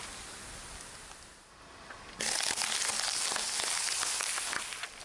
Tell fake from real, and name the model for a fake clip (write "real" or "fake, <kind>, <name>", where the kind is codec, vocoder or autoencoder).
real